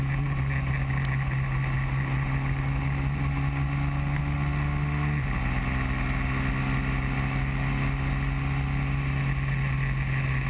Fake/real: real